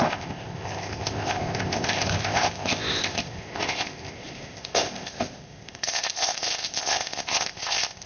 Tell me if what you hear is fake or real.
fake